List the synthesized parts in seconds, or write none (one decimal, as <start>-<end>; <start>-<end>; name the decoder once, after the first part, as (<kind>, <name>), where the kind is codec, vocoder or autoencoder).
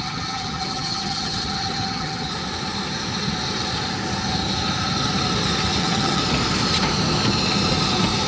0.0-2.3 (vocoder, HiFi-GAN); 5.8-6.2